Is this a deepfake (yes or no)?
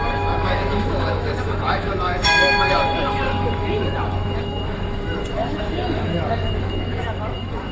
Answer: yes